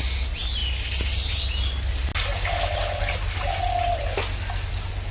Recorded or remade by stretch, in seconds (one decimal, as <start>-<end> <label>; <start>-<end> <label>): 0.0-5.1 recorded